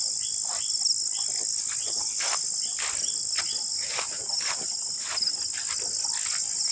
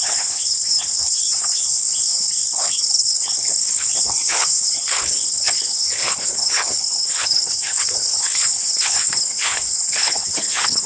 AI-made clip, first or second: second